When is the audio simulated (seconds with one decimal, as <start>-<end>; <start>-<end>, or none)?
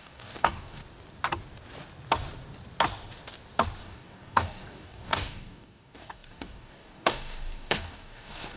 0.0-0.8; 3.8-8.6